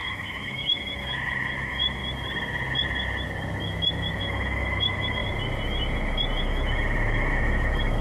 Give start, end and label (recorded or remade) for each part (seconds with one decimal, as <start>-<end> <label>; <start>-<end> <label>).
0.0-2.0 remade; 2.0-4.2 recorded; 4.2-5.2 remade; 5.2-6.4 recorded; 6.4-8.0 remade